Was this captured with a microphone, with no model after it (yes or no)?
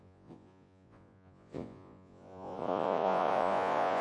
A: no